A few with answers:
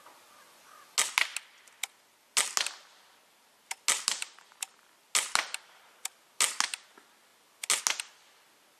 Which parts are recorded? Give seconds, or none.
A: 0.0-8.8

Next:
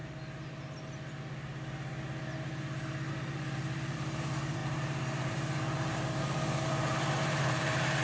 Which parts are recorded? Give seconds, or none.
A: 0.0-3.1

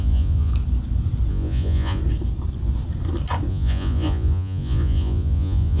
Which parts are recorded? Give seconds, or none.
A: 0.5-1.3; 2.0-3.5

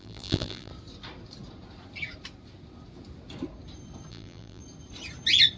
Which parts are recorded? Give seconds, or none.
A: 0.7-4.1; 4.6-5.6

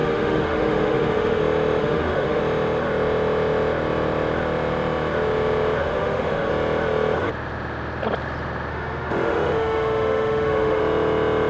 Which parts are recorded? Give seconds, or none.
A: 1.4-1.8; 2.4-5.8; 6.5-8.7; 10.8-11.5

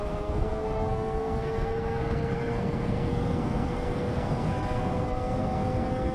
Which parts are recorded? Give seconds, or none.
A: none